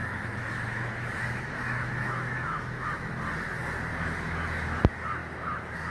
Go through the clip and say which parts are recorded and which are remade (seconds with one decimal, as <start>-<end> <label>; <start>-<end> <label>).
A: 0.0-3.2 remade; 3.2-3.9 recorded; 3.9-4.8 remade; 4.8-5.2 recorded; 5.2-5.9 remade